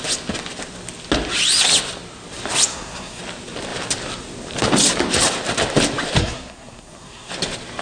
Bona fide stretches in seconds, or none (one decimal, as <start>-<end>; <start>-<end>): 0.0-2.7; 3.2-6.2; 7.3-7.8